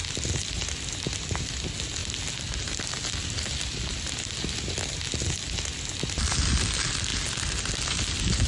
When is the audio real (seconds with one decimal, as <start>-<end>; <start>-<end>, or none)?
0.0-8.5